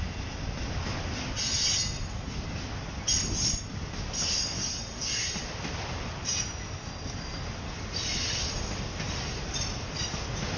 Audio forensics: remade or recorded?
recorded